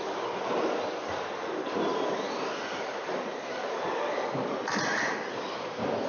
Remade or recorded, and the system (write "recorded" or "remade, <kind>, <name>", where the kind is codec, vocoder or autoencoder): recorded